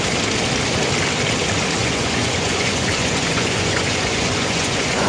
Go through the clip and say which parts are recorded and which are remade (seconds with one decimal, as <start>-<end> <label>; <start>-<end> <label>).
0.0-1.8 recorded; 1.8-5.1 remade